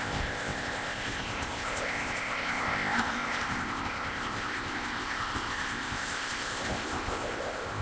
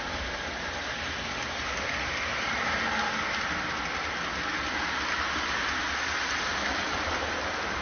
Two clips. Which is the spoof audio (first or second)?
first